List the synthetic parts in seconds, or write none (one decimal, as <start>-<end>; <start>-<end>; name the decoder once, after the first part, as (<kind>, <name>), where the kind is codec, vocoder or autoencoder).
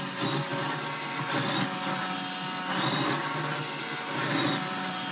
none